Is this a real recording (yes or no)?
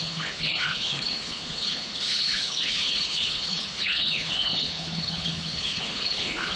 no